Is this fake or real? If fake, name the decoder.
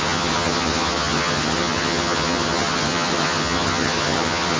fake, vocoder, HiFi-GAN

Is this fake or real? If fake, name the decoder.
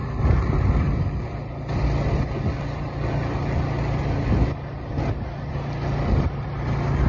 real